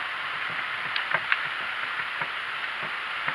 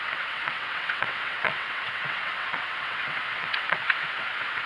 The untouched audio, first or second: first